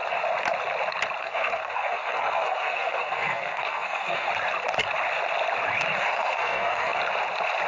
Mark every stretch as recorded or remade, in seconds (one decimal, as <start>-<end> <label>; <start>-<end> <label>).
0.0-1.2 recorded; 1.2-4.3 remade; 4.3-6.0 recorded; 6.0-7.0 remade; 7.0-7.7 recorded